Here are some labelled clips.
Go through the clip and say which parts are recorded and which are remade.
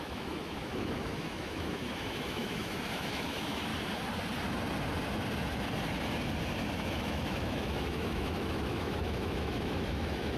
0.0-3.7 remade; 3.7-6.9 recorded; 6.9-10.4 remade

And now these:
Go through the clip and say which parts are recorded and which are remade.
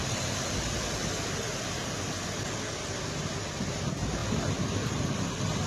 0.0-5.7 recorded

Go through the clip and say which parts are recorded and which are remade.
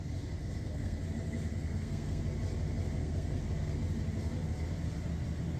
0.0-0.4 recorded; 0.4-1.0 remade; 1.0-1.5 recorded; 1.5-2.2 remade; 2.2-3.0 recorded; 3.0-3.7 remade; 3.7-5.6 recorded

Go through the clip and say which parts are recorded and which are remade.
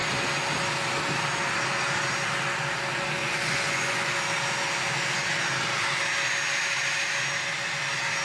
0.0-3.2 recorded; 3.2-4.1 remade; 4.1-8.2 recorded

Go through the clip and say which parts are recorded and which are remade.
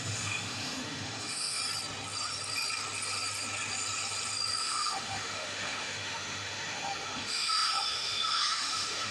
0.0-1.6 remade; 1.6-4.6 recorded; 4.6-9.1 remade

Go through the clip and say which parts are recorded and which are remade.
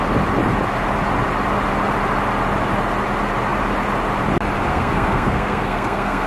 0.0-4.7 recorded; 4.7-6.3 remade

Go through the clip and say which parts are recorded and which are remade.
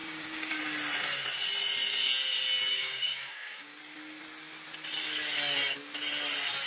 0.0-0.6 remade; 0.6-2.7 recorded; 2.7-3.8 remade; 3.8-6.7 recorded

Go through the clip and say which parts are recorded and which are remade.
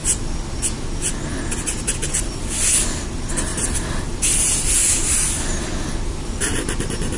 0.0-7.2 recorded